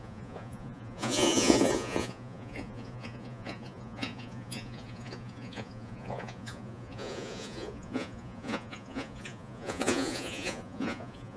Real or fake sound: fake